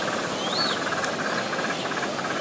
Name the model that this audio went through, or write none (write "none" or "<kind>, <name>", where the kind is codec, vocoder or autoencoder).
none